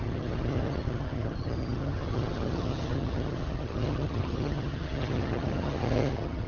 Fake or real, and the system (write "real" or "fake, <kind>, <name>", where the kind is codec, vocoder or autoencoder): fake, vocoder, HiFi-GAN